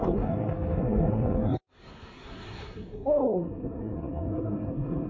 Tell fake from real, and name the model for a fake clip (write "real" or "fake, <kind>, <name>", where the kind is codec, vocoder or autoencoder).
fake, codec, SNAC